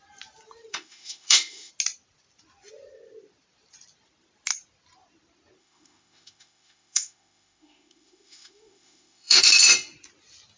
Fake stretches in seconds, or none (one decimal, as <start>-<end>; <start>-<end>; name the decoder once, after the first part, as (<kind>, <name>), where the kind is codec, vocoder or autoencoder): 0.7-1.7 (autoencoder, DAC-VAE); 5.6-9.4